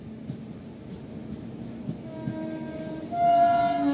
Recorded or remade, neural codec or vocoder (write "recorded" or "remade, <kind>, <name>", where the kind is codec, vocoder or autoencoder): recorded